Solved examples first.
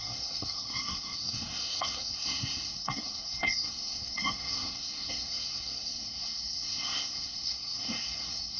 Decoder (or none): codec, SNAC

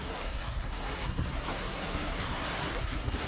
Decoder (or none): codec, SNAC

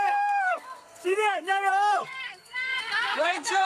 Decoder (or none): codec, SNAC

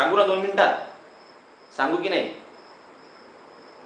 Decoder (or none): none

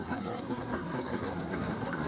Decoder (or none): codec, SNAC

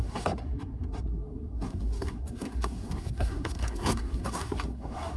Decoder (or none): codec, SNAC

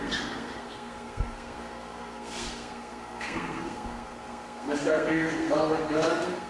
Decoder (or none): codec, SNAC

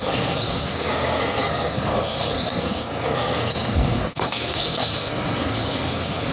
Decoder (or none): codec, SNAC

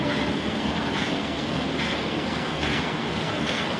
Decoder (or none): codec, SNAC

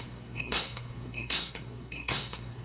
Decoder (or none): codec, SNAC